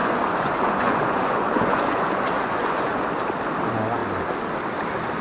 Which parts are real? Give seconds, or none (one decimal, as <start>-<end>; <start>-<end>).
3.1-5.2